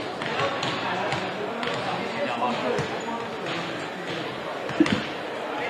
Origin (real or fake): real